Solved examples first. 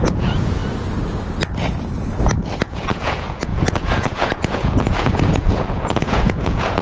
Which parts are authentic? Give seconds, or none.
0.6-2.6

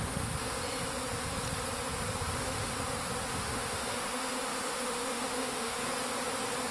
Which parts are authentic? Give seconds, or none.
0.6-2.3; 2.7-3.3; 5.8-6.7

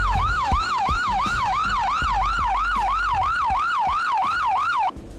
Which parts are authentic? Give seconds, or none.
1.6-4.7